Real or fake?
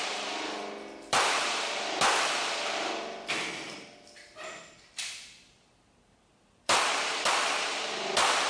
fake